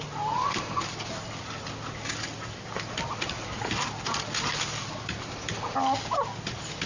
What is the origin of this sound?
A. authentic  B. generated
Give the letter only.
A